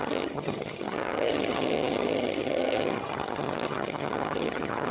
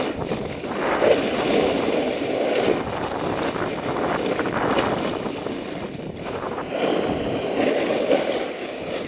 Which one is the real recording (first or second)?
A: second